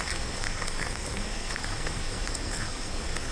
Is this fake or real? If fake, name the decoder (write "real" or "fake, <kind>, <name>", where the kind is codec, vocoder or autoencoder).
fake, codec, SNAC